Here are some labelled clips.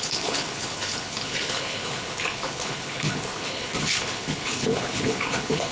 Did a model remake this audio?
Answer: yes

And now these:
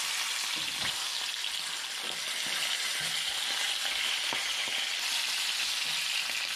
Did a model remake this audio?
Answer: no